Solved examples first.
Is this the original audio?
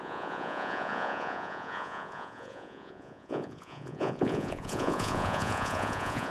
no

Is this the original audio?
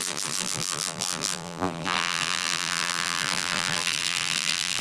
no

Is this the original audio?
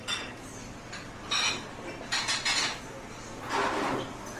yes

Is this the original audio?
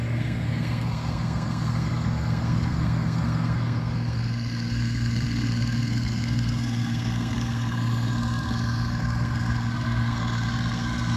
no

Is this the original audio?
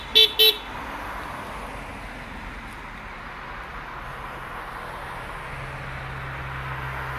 yes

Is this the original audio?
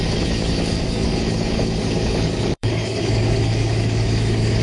no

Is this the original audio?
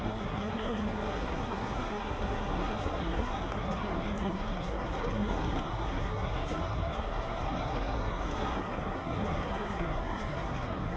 no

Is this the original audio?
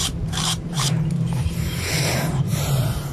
no